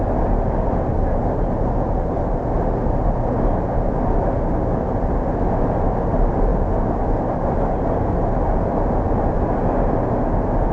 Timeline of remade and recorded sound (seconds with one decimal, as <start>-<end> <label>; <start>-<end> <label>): 0.0-10.7 recorded